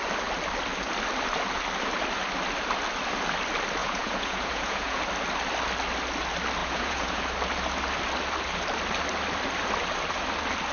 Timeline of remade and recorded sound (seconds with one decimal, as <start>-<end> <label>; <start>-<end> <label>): 0.0-3.8 recorded; 3.8-5.0 remade; 5.0-6.6 recorded; 6.6-7.2 remade; 7.2-10.7 recorded